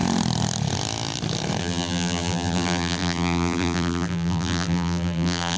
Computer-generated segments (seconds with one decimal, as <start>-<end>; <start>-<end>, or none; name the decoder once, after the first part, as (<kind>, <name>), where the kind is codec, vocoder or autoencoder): 1.6-5.6 (vocoder, BigVGAN v2)

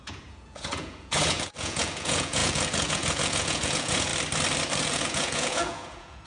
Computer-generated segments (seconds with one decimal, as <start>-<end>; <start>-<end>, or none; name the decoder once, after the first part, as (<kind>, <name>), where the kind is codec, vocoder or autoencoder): 0.0-4.1 (vocoder, Vocos); 4.8-6.3